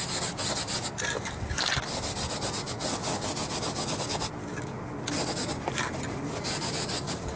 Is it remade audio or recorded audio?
recorded